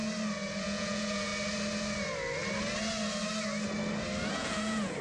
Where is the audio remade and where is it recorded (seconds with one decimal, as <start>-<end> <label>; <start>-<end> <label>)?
0.0-0.6 recorded; 0.6-1.3 remade; 1.3-4.3 recorded; 4.3-5.0 remade